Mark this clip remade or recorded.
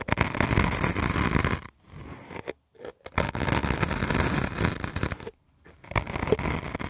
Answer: recorded